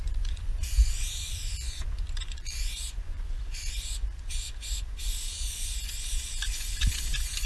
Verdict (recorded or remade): remade